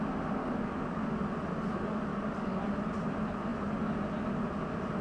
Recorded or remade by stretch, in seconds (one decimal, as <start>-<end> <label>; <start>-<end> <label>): 0.0-0.4 recorded; 0.4-1.0 remade; 1.0-2.1 recorded; 2.1-2.6 remade; 2.6-5.0 recorded